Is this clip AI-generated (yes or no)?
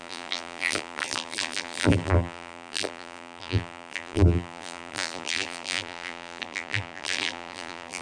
yes